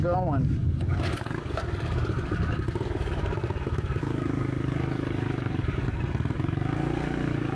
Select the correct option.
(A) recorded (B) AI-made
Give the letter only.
B